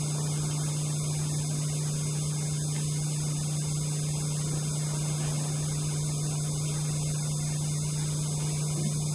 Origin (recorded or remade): recorded